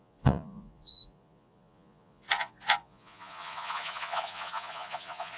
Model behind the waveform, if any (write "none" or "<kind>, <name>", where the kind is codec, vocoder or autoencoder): vocoder, Vocos